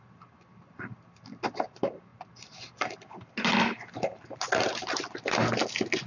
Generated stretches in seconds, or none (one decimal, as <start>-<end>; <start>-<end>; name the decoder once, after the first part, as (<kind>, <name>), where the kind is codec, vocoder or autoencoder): none